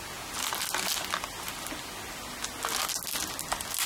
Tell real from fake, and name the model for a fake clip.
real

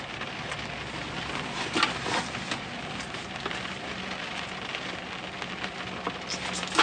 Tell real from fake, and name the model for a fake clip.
real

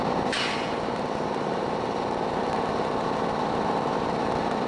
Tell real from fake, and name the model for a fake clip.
real